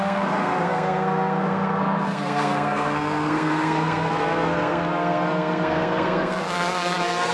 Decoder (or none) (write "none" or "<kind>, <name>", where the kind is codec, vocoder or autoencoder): codec, SNAC